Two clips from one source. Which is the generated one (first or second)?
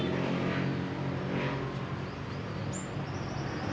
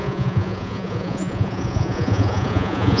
second